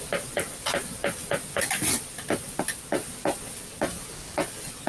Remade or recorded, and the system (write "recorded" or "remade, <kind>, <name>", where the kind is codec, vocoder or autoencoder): recorded